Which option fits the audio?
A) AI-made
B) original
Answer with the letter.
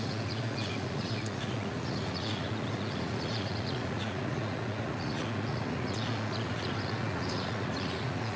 A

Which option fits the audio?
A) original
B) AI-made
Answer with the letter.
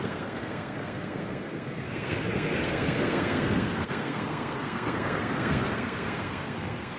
B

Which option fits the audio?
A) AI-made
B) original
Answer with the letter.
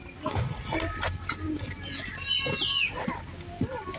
B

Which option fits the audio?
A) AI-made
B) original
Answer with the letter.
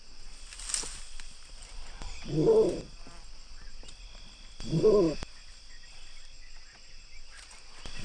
B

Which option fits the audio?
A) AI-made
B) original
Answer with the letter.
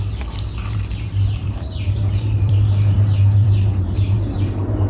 A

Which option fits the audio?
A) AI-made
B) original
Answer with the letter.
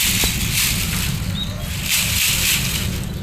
B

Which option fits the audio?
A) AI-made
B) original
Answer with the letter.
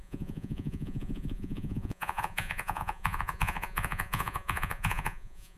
A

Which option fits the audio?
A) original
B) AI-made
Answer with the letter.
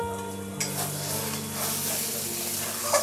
A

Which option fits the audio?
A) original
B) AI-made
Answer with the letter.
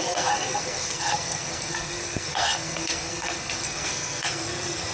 B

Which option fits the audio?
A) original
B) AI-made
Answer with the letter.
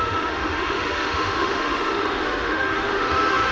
B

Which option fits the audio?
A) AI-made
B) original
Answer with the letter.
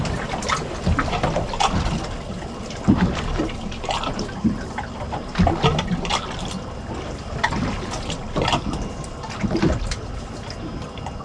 B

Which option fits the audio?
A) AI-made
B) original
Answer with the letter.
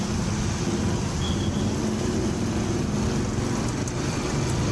B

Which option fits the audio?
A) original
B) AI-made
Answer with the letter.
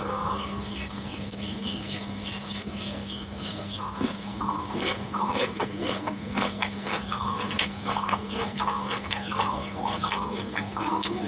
B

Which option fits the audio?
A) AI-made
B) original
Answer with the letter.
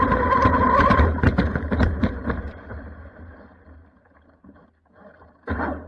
A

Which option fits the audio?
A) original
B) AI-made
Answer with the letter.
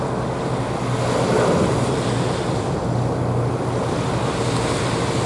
A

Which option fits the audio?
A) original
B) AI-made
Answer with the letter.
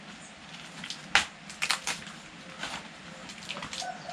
A